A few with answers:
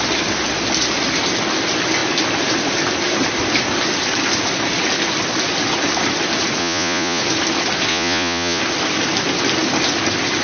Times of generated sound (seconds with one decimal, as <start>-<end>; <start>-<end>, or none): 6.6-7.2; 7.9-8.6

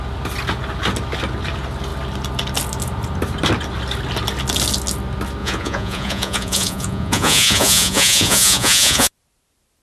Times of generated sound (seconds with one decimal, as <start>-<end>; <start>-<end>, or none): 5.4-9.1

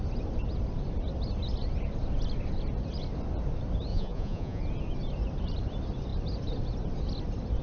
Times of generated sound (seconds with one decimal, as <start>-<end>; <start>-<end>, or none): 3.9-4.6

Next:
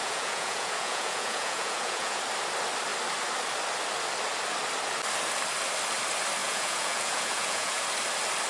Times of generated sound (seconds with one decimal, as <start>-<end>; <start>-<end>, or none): 0.0-2.2; 6.4-7.8

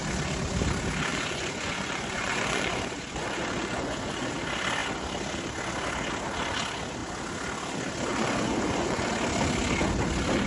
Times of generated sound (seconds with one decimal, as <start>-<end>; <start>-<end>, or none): 1.1-4.3; 8.1-9.1

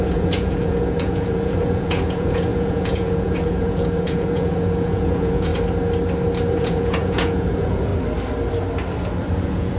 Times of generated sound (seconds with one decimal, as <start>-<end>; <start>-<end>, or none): 0.0-5.5; 6.5-7.9; 9.4-9.8

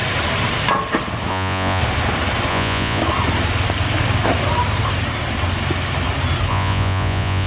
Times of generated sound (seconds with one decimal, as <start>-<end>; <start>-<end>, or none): 1.3-1.8; 2.5-3.0; 6.5-7.5

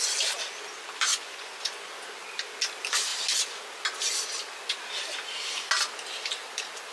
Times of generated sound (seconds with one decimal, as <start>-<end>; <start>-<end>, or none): 1.1-1.9